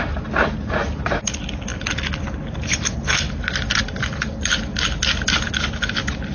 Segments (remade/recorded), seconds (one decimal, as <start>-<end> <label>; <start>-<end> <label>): 0.0-6.3 recorded